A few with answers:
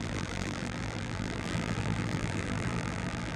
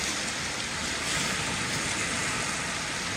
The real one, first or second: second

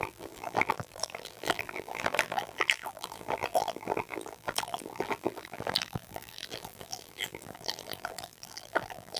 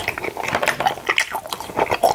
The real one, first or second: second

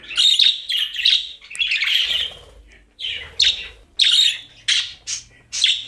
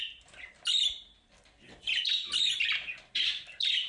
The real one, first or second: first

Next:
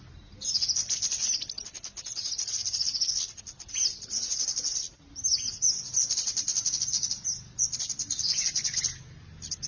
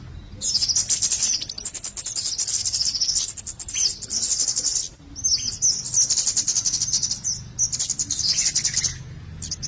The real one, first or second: second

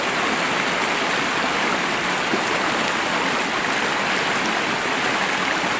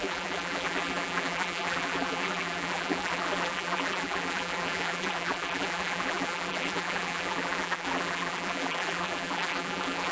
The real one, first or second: first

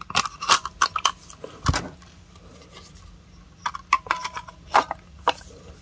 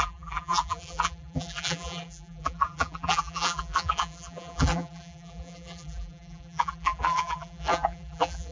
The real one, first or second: first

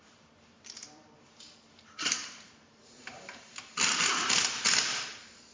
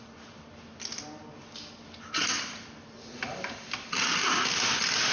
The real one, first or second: second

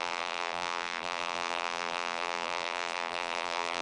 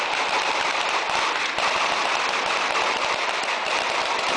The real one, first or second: second